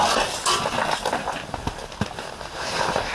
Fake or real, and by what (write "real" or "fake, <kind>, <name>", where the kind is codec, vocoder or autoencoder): real